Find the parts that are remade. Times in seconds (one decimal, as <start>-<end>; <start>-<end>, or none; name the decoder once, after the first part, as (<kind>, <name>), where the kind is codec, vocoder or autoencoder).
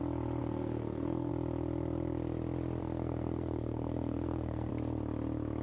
0.4-1.3 (codec, SNAC); 2.8-4.7